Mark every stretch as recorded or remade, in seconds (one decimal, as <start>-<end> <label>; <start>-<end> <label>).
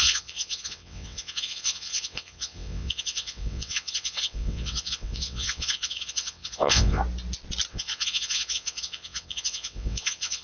0.0-7.0 remade; 7.0-7.7 recorded; 7.7-10.4 remade